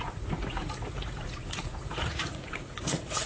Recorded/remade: remade